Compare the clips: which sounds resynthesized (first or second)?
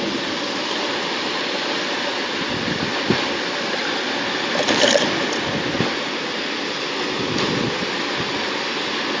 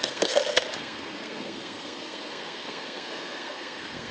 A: second